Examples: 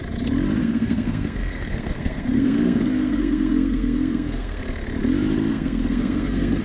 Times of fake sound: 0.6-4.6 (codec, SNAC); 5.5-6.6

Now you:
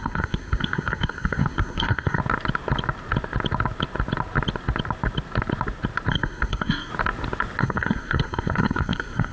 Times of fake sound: 0.0-2.2 (codec, SNAC); 6.1-6.9; 7.6-9.3

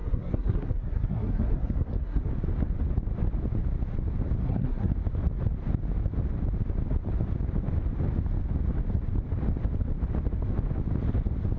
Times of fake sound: 0.0-2.2 (codec, SNAC); 4.4-4.9

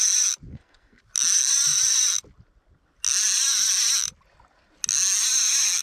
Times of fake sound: 0.5-1.0 (codec, SNAC)

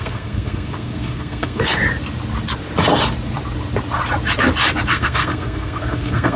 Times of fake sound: 0.0-1.8 (codec, SNAC); 4.9-6.4

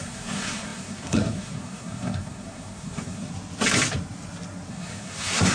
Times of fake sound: 0.0-3.3 (codec, SNAC); 4.7-5.5

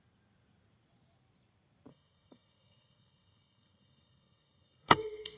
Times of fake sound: 1.9-5.4 (codec, SNAC)

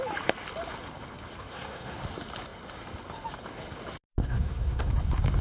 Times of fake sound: 1.5-2.0 (codec, SNAC); 4.2-4.9